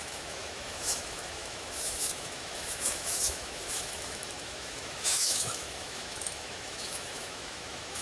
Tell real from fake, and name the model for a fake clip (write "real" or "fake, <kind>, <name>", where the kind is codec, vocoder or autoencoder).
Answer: fake, autoencoder, DAC-VAE